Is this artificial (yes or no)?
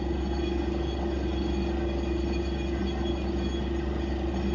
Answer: no